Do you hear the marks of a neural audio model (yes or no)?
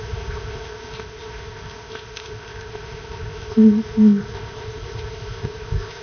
yes